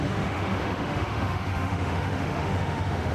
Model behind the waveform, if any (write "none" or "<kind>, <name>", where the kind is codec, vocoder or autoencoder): autoencoder, DAC-VAE